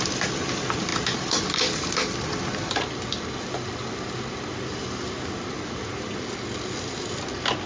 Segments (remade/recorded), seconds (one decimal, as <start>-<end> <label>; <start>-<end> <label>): 0.0-7.7 recorded

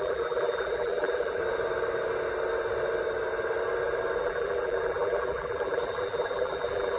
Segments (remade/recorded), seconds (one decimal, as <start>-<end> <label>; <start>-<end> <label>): 0.0-1.4 remade; 1.4-4.2 recorded; 4.2-7.0 remade

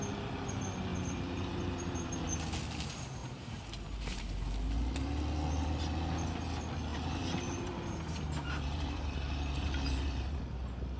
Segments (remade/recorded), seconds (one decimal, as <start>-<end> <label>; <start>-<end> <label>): 0.0-0.9 recorded; 0.9-2.2 remade; 2.2-3.2 recorded; 3.2-4.2 remade; 4.2-6.9 recorded; 6.9-10.4 remade; 10.4-11.0 recorded

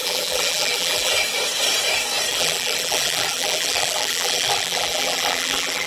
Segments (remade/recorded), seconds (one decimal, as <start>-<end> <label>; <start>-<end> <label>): 0.0-1.1 remade; 1.1-2.3 recorded; 2.3-5.9 remade

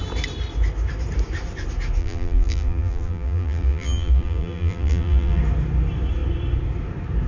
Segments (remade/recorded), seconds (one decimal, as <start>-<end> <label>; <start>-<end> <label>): 0.0-2.0 recorded; 2.0-5.4 remade; 5.4-7.3 recorded